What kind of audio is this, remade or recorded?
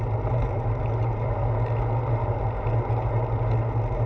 recorded